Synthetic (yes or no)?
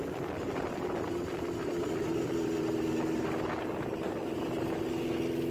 no